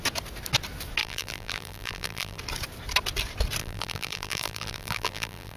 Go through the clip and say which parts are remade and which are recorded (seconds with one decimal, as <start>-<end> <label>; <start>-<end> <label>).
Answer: 0.0-1.0 recorded; 1.0-2.4 remade; 2.4-3.6 recorded; 3.6-5.6 remade